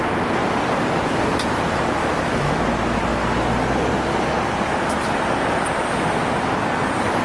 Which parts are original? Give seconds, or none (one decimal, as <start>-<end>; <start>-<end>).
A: 0.0-2.0; 2.6-7.2